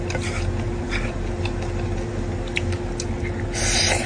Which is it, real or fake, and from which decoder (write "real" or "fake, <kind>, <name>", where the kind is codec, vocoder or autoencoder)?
real